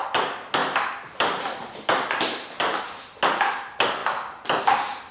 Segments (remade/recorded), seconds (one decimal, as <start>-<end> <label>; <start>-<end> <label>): 0.0-0.6 recorded; 0.6-2.8 remade; 2.8-5.1 recorded